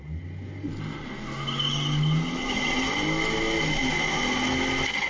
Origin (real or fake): real